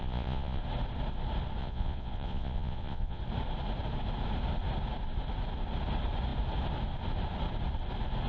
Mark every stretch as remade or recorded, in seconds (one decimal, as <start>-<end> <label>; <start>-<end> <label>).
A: 0.0-0.6 remade; 0.6-1.6 recorded; 1.6-3.2 remade; 3.2-8.3 recorded